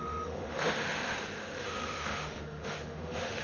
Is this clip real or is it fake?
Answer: fake